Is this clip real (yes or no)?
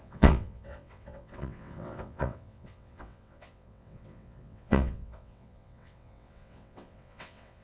no